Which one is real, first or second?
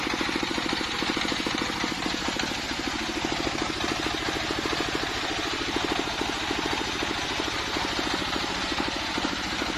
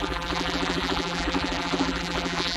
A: first